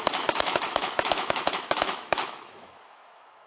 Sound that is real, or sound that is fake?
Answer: fake